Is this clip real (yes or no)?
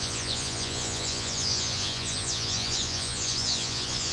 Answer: no